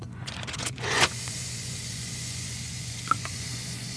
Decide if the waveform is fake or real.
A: fake